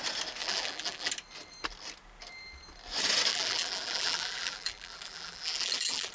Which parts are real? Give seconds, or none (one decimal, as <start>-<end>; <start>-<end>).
0.0-0.4; 1.1-3.3